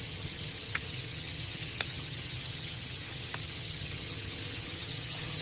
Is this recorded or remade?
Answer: remade